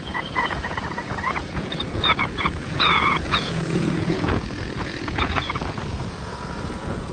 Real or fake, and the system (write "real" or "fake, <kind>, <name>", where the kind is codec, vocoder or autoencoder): fake, vocoder, Vocos